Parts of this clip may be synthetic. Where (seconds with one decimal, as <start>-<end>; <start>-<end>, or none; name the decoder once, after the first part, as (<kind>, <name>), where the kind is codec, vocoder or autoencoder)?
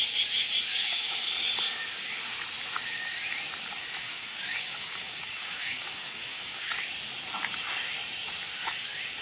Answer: 0.7-1.3 (codec, DAC); 4.0-6.7